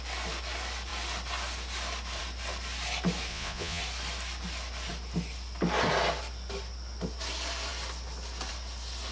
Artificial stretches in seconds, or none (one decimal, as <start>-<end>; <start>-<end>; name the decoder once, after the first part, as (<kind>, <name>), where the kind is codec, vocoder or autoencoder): 3.3-3.8 (vocoder, Vocos)